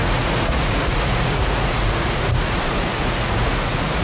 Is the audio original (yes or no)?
no